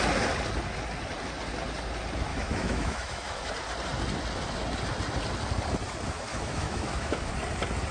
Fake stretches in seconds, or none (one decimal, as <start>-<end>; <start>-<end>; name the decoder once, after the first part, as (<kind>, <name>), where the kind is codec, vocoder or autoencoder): 2.3-3.5 (autoencoder, DAC-VAE); 6.3-7.3